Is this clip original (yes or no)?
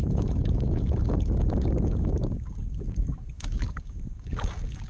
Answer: no